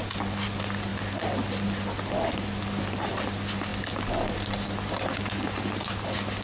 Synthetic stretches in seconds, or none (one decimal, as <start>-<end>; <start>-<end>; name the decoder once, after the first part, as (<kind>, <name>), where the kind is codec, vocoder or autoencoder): none